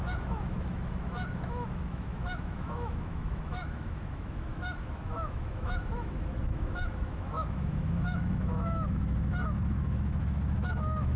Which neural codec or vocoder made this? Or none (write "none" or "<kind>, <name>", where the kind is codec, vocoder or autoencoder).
autoencoder, DAC-VAE